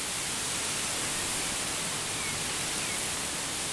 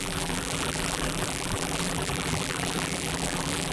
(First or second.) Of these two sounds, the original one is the first